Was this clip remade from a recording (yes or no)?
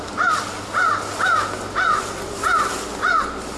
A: no